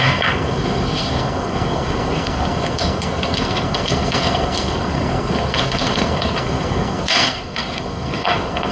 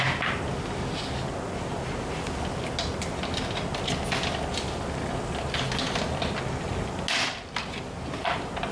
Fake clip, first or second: first